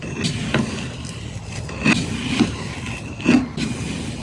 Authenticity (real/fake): real